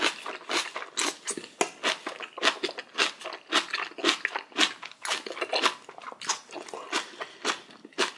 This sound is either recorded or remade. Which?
recorded